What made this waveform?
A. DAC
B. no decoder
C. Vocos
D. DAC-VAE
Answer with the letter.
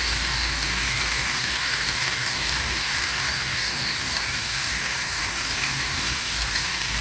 A